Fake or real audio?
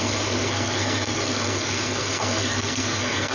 fake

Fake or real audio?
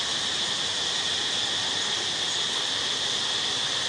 real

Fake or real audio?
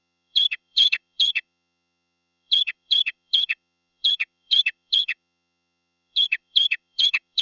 fake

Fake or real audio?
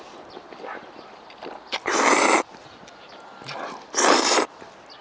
real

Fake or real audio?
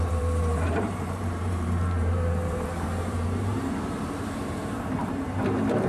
fake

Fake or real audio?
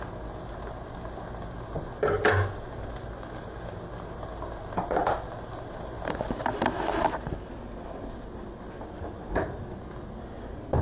real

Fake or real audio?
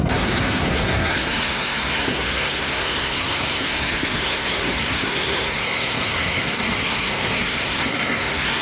fake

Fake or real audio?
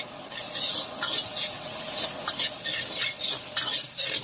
real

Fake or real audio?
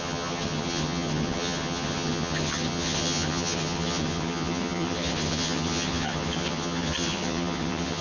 fake